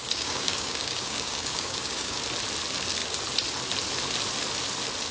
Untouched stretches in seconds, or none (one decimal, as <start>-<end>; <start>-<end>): 2.2-5.1